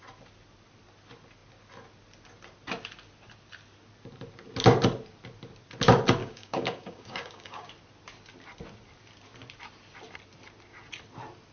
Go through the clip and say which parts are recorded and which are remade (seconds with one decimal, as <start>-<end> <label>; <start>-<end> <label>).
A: 0.0-6.2 recorded; 6.2-7.7 remade; 7.7-11.5 recorded